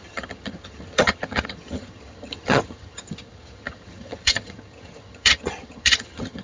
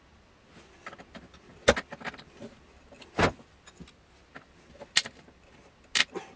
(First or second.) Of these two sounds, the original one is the second